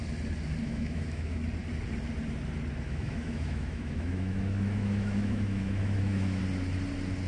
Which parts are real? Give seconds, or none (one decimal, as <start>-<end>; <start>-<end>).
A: 0.0-0.6; 1.4-2.8; 6.4-7.3